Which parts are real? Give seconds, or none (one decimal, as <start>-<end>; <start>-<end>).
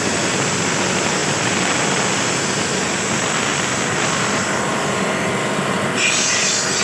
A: 0.0-1.2; 1.7-3.5; 4.7-6.8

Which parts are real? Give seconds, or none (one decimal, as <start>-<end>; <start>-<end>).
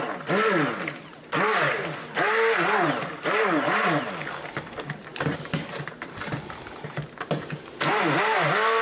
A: 0.0-8.8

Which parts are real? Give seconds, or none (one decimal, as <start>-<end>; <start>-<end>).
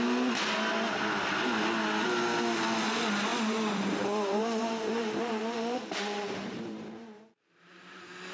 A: 0.0-3.3; 7.8-8.3